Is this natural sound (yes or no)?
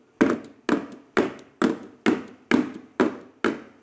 yes